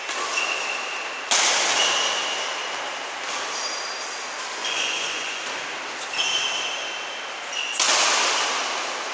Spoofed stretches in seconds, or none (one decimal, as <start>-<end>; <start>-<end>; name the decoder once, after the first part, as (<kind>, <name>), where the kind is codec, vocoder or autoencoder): 4.6-5.4 (vocoder, Vocos)